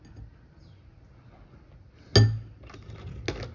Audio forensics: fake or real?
real